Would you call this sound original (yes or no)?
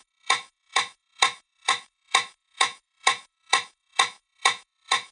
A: no